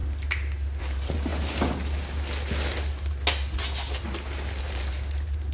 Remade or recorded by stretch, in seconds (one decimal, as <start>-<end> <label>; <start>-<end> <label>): 0.0-0.8 recorded; 0.8-1.3 remade; 1.3-4.6 recorded; 4.6-5.5 remade